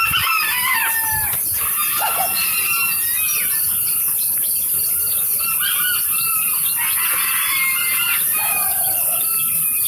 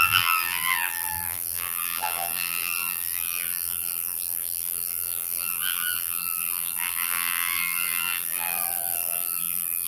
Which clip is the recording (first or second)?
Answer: first